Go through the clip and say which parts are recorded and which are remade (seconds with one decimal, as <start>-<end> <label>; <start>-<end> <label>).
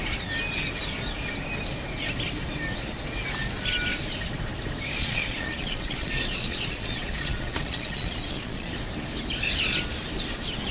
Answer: 0.0-5.0 recorded; 5.0-8.7 remade; 8.7-10.7 recorded